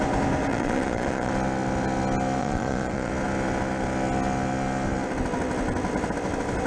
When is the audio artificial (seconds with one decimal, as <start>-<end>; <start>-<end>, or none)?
0.5-1.3; 2.4-3.1